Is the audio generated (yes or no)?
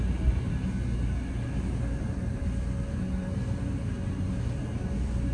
no